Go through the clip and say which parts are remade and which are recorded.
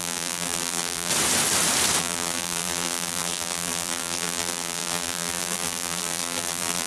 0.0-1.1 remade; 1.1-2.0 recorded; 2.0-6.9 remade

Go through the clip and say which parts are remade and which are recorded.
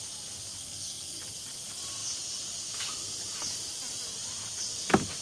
0.0-0.6 recorded; 0.6-1.2 remade; 1.2-5.2 recorded